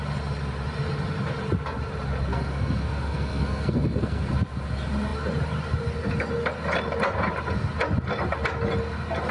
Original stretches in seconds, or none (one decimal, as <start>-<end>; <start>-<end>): 0.0-2.3; 4.3-9.3